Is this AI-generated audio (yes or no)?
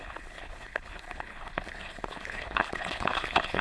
yes